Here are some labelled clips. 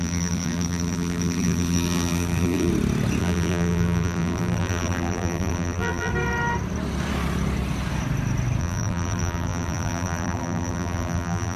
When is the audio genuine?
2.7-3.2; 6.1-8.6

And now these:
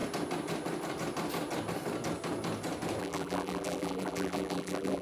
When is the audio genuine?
0.0-3.0

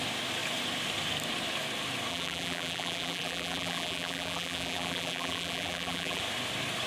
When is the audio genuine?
0.0-2.1; 6.2-6.9

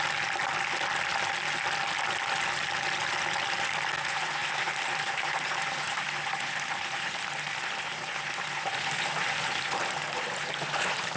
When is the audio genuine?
0.0-4.4; 4.9-11.2

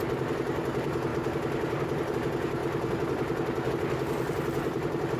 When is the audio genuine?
1.1-2.1; 2.6-3.7

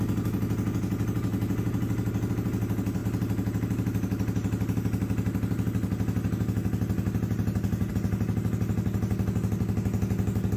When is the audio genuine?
0.0-10.6

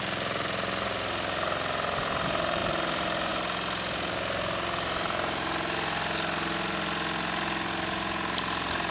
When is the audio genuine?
0.0-8.9

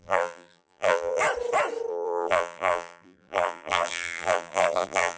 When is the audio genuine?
1.2-1.9